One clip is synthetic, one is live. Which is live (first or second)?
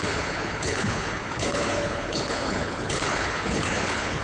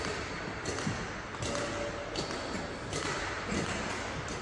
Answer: second